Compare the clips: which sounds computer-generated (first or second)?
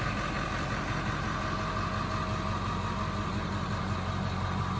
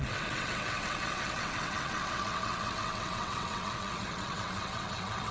second